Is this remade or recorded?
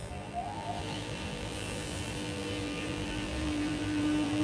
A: remade